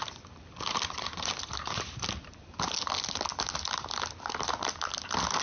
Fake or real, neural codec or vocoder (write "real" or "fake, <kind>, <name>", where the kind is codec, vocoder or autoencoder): real